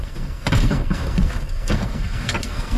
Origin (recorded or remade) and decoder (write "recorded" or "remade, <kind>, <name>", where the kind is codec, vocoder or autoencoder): remade, codec, SNAC